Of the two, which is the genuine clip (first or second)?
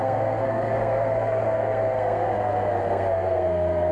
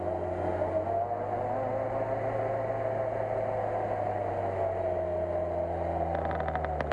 second